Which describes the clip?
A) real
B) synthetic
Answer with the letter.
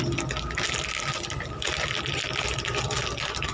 A